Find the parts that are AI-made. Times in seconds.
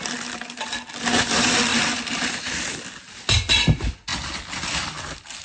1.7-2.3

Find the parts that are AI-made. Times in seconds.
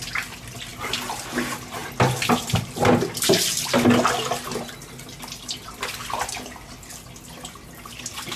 none